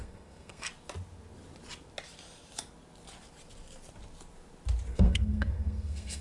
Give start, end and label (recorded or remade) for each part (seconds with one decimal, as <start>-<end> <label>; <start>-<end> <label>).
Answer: 0.0-0.7 remade; 0.7-4.9 recorded; 4.9-6.2 remade